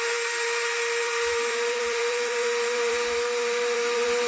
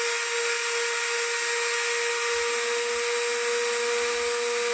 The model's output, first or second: first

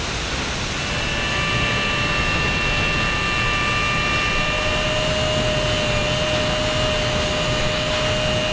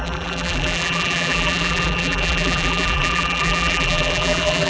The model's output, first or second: second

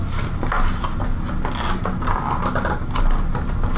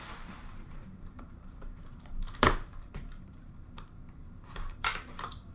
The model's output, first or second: second